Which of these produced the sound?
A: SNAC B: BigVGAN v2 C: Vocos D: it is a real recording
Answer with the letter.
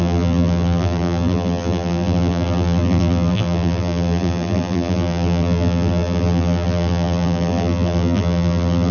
B